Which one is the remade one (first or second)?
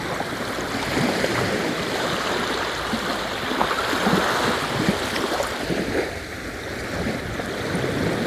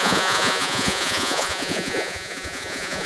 second